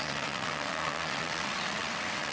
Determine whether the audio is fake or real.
fake